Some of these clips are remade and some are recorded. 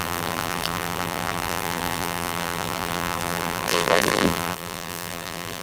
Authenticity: remade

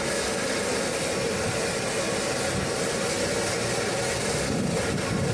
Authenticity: recorded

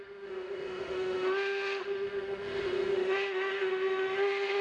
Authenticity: remade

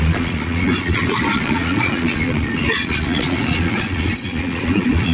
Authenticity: remade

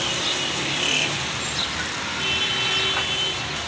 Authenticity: recorded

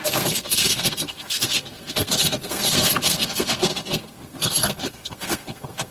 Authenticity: remade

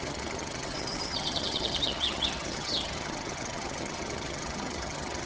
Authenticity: remade